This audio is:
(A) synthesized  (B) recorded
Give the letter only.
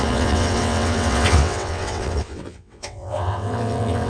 A